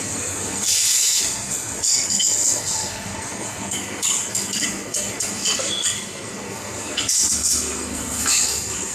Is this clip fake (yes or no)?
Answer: yes